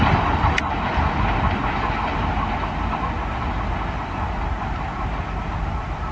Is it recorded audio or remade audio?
recorded